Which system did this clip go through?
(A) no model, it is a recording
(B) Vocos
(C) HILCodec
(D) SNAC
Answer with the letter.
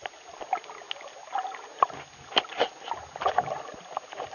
A